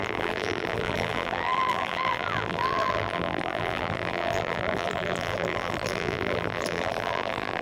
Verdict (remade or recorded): remade